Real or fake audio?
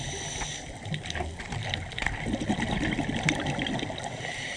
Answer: real